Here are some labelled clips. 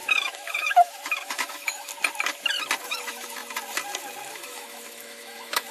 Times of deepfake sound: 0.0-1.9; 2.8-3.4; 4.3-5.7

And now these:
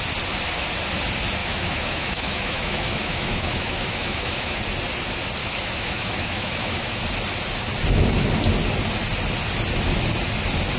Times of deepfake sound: 1.4-4.6; 5.4-7.0

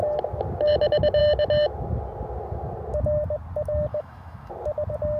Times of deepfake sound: 3.9-4.5

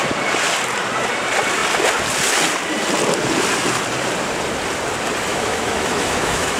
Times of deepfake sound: 5.3-6.6